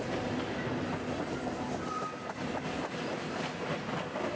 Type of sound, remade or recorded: recorded